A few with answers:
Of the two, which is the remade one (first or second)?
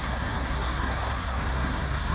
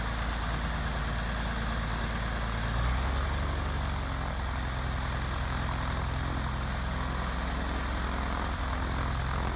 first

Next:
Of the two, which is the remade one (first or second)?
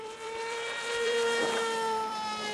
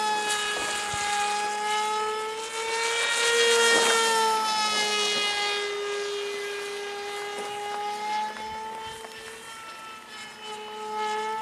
first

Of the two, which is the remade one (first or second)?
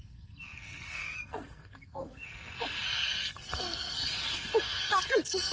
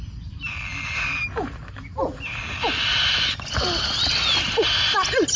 first